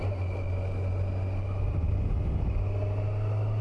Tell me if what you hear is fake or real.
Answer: real